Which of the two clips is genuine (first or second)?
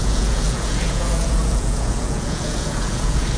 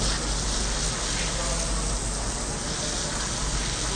second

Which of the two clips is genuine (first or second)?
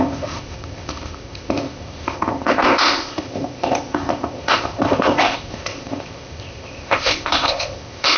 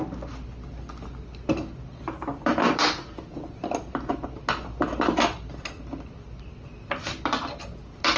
second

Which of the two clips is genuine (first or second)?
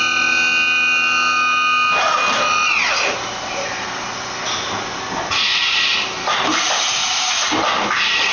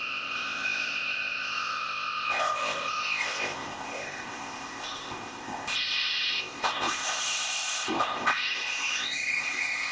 first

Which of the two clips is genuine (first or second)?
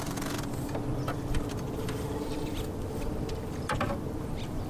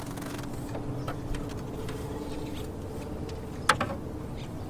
second